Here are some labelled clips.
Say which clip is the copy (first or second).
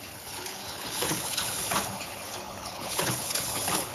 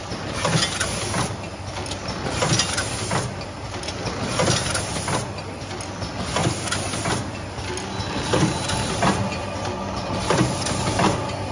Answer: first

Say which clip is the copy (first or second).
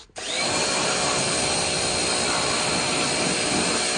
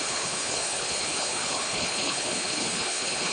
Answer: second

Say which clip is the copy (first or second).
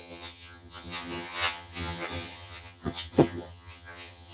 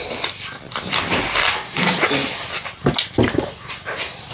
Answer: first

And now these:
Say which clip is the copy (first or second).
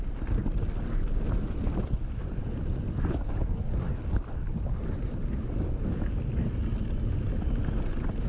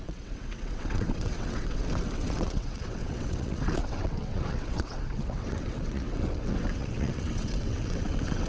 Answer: second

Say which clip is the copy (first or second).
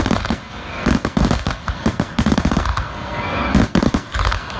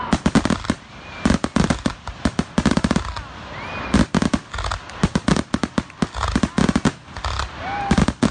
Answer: first